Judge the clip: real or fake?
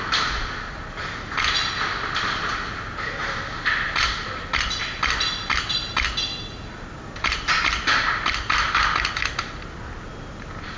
real